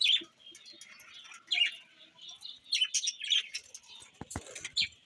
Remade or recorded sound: recorded